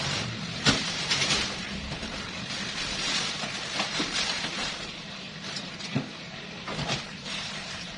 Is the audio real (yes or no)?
no